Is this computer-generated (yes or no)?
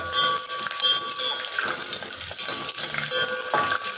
no